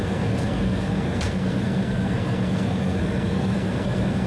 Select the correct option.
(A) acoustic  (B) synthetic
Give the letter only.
B